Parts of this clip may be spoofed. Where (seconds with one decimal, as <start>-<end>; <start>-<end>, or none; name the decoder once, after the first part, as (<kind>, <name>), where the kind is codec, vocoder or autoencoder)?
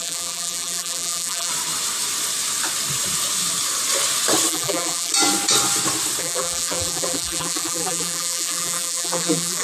0.0-1.5 (vocoder, BigVGAN v2); 4.5-5.1; 6.2-9.6